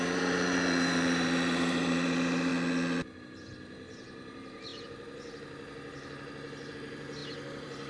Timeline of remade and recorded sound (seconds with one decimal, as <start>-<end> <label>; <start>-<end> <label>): 0.0-2.5 remade; 2.5-3.2 recorded; 3.2-7.9 remade